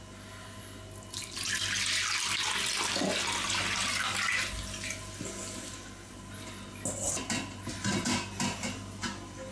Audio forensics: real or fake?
real